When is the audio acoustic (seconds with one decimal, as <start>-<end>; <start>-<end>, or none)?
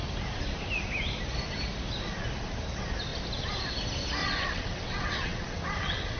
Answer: 0.0-4.2